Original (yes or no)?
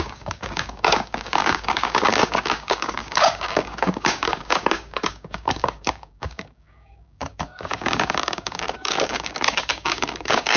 no